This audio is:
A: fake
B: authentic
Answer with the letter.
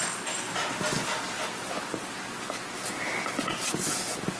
B